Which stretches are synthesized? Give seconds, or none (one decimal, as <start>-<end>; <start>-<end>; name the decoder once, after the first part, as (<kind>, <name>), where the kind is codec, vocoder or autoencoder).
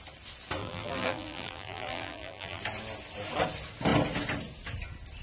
0.6-2.6 (vocoder, BigVGAN v2)